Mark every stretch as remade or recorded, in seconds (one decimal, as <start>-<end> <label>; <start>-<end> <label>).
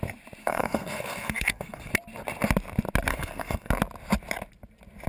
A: 0.0-0.4 recorded; 0.4-1.9 remade; 1.9-3.1 recorded; 3.1-3.7 remade; 3.7-5.1 recorded